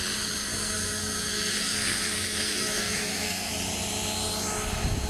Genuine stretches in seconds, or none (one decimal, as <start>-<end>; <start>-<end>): 0.0-0.4; 3.5-5.1